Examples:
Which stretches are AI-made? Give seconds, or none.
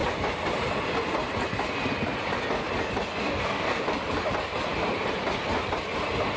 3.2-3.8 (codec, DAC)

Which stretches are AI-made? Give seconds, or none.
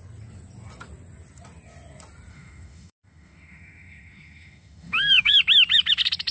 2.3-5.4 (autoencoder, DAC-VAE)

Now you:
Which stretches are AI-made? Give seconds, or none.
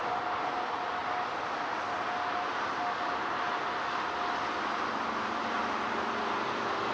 none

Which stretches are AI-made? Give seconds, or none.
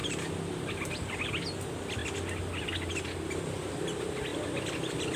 0.0-1.3 (vocoder, BigVGAN v2); 2.0-2.6; 4.3-5.2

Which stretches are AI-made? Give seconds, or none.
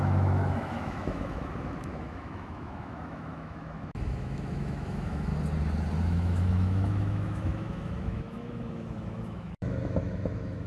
0.0-5.3 (autoencoder, DAC-VAE); 6.0-10.7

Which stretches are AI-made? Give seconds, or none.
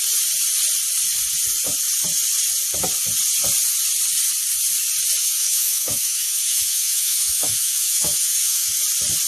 5.2-8.8 (autoencoder, DAC-VAE)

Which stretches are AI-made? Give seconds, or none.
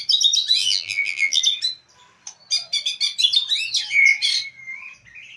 0.6-1.4 (vocoder, BigVGAN v2)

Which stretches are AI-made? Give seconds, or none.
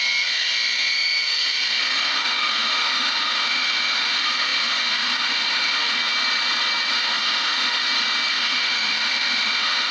0.0-6.0 (autoencoder, DAC-VAE); 6.9-7.8; 8.3-9.9